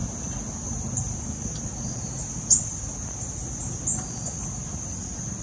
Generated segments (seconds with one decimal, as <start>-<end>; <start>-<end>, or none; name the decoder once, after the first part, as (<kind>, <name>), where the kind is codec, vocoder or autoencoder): none